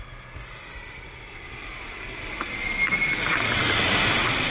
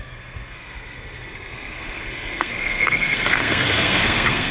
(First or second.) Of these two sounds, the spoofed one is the second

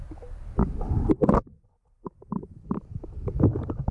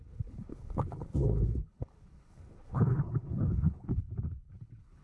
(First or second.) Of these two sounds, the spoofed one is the second